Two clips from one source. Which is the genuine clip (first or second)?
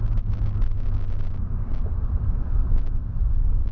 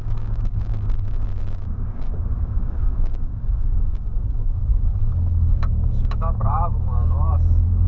first